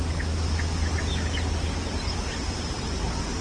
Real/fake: real